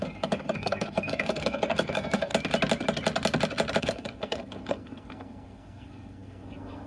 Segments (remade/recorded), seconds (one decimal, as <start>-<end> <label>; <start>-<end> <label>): 0.0-2.3 remade; 2.3-3.8 recorded; 3.8-6.9 remade